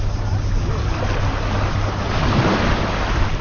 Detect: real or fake real